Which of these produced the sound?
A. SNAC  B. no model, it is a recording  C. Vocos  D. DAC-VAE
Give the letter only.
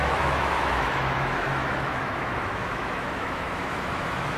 D